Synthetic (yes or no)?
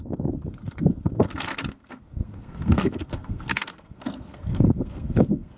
yes